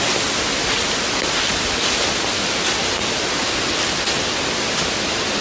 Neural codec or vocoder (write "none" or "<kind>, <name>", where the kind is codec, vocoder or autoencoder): none